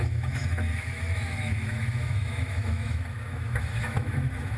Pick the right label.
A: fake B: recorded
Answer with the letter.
A